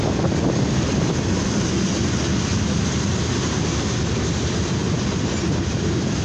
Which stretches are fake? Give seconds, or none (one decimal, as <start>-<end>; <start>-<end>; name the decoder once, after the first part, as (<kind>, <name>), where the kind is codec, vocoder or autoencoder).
none